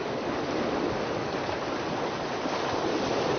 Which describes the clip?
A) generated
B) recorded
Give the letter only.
B